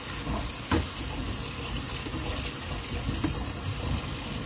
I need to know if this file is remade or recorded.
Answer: recorded